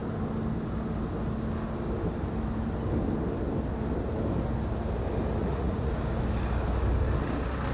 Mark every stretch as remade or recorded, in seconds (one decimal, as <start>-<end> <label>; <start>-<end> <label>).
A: 0.0-5.4 recorded; 5.4-5.9 remade; 5.9-7.7 recorded